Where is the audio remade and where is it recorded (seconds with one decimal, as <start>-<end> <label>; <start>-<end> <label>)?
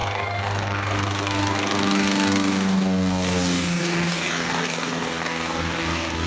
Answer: 0.0-6.3 remade